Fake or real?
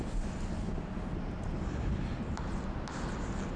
real